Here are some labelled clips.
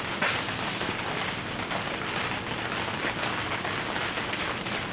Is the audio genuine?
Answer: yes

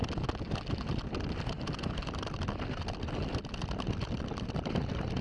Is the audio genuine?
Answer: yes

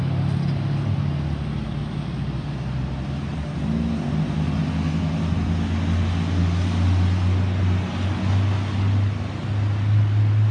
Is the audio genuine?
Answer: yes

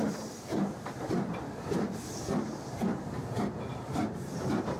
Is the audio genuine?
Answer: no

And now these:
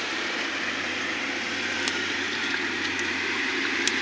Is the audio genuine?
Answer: no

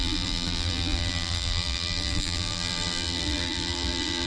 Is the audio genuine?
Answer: no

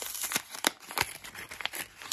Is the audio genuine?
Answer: no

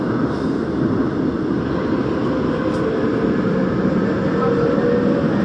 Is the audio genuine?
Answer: no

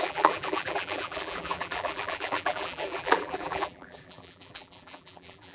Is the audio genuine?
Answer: no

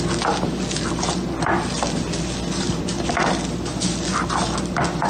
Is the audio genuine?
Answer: yes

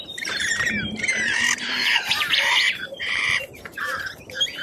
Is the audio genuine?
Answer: no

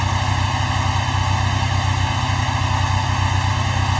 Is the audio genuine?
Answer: yes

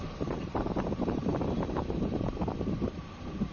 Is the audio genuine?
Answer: no